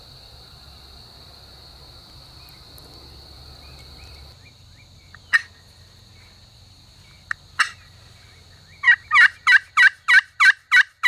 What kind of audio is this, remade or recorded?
recorded